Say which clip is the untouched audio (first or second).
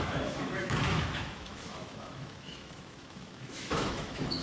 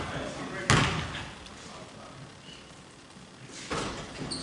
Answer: second